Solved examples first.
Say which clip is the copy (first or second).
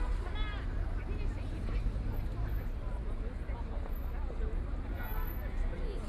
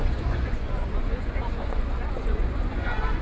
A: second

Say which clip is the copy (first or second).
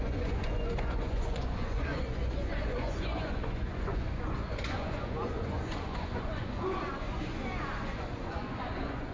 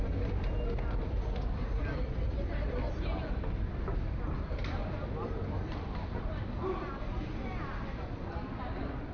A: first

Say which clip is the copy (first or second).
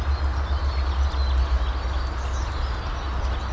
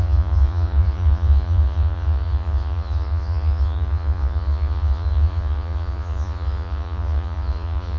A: second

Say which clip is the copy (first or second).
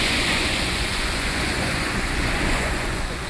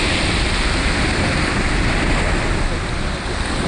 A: first